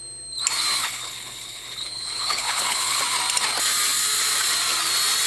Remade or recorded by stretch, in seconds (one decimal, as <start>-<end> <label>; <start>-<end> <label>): 0.0-0.8 recorded; 0.8-3.0 remade; 3.0-5.3 recorded